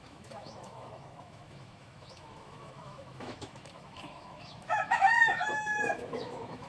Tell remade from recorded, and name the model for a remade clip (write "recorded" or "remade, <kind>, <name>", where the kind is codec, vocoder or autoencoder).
remade, autoencoder, DAC-VAE